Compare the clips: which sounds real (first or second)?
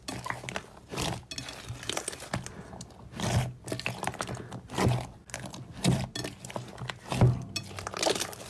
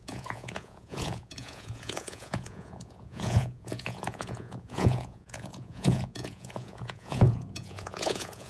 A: first